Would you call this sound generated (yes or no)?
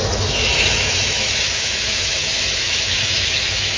yes